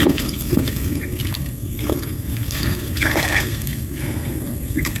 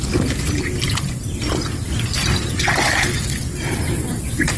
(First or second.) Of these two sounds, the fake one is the first